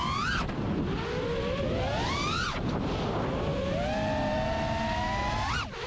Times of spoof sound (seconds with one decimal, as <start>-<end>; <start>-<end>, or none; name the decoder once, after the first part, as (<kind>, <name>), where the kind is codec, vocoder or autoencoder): none